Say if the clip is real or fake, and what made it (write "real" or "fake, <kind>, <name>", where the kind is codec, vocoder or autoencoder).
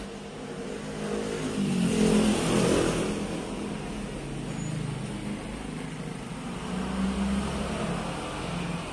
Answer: real